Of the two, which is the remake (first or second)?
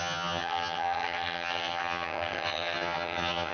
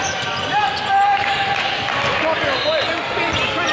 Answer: first